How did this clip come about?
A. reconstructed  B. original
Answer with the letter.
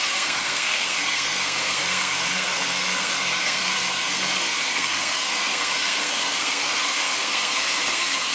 A